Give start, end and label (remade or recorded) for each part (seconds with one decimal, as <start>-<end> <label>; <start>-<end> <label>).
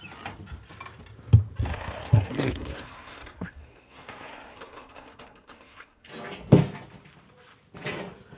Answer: 0.0-1.7 recorded; 1.7-6.1 remade; 6.1-8.4 recorded